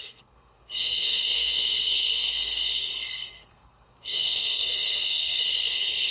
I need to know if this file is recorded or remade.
remade